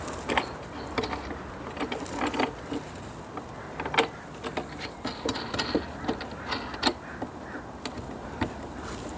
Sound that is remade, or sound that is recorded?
recorded